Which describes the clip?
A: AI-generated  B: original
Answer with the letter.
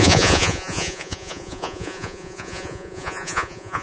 A